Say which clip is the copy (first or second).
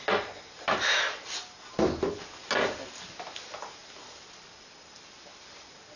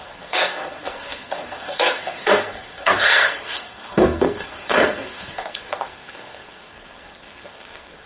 second